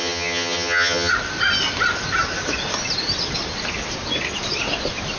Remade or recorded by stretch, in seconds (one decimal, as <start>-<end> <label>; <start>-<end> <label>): 0.0-1.1 remade; 1.1-5.2 recorded